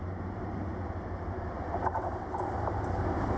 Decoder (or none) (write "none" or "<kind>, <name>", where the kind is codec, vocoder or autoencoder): none